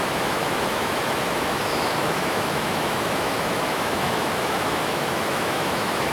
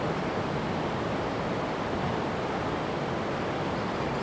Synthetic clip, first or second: first